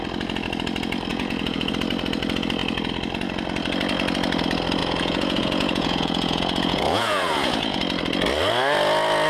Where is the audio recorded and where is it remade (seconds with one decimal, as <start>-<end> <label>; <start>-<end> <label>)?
0.0-1.1 recorded; 1.1-1.7 remade; 1.7-4.8 recorded; 4.8-7.8 remade; 7.8-9.3 recorded